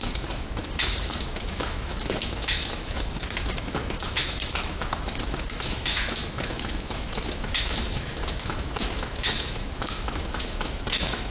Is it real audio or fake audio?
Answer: fake